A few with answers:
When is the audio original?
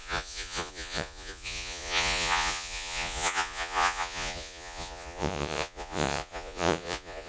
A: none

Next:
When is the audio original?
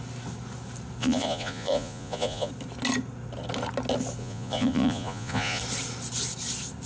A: 0.0-1.0; 2.5-4.2; 5.6-6.9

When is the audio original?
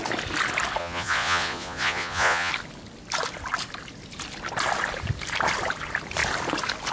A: 0.0-0.8; 2.5-6.9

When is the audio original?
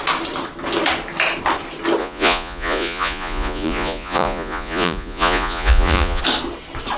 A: 0.0-2.0; 6.2-7.0